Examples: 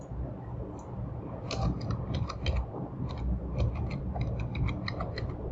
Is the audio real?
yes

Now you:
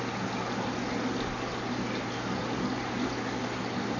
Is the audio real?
yes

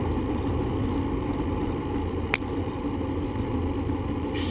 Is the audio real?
yes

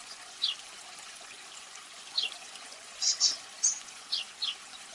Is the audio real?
no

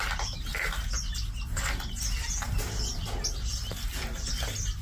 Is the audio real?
yes